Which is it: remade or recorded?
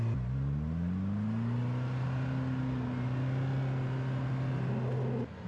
recorded